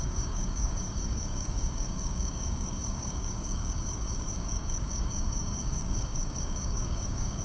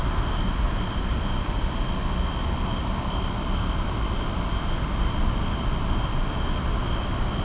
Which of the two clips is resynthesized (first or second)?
first